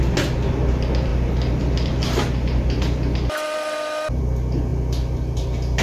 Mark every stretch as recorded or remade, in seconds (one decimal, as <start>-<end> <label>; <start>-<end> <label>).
0.0-5.8 recorded